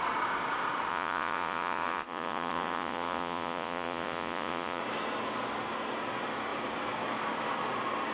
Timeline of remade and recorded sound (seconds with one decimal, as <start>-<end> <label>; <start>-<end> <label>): 0.0-0.9 recorded; 0.9-4.8 remade; 4.8-8.1 recorded